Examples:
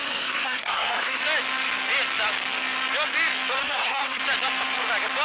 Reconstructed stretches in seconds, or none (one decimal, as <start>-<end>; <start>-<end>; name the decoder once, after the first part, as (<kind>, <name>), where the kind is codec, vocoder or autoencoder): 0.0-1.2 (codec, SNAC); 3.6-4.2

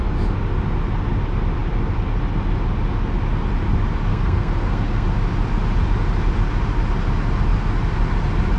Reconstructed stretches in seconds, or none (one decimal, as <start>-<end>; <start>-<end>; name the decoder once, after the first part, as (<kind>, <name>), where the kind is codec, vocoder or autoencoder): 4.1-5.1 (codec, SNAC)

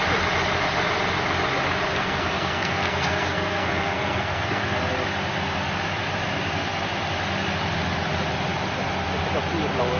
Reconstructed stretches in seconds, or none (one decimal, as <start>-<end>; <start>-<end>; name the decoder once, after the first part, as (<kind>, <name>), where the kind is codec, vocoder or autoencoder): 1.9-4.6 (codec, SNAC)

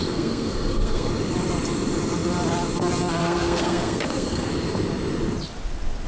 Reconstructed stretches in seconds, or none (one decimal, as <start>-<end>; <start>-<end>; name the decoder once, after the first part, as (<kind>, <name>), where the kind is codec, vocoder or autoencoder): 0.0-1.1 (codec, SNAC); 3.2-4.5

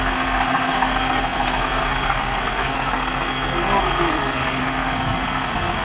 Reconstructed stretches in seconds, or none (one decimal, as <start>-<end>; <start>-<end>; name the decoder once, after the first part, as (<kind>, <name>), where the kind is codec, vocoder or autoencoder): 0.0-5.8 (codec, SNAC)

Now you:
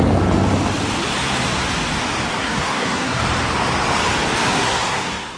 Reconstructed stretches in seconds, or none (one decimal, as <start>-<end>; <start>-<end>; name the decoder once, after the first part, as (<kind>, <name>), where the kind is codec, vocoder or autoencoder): 2.3-3.2 (codec, SNAC); 4.5-5.4